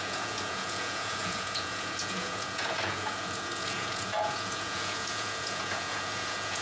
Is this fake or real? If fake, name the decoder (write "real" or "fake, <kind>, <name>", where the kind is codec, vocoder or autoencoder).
fake, vocoder, Vocos